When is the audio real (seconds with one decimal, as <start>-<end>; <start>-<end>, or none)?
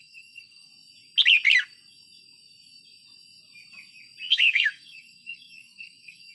0.7-4.3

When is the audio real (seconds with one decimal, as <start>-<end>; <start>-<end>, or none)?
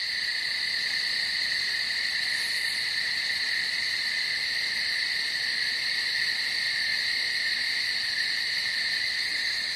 0.0-9.8